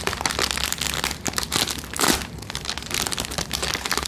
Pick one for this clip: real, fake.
real